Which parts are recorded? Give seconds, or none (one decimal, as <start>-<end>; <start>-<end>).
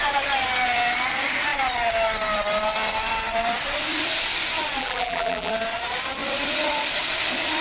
0.0-4.8; 5.5-7.6